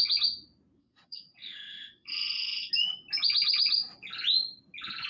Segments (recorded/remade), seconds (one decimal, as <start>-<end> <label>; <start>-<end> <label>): 0.0-0.8 recorded; 0.8-2.7 remade; 2.7-5.1 recorded